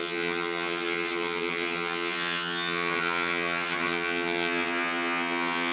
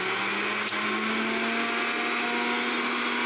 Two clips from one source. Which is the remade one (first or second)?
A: first